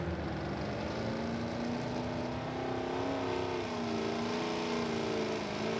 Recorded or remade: recorded